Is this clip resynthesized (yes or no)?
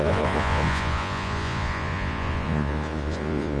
yes